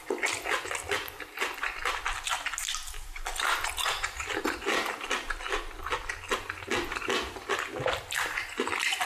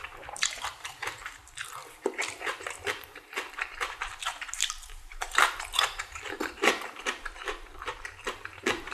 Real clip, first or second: first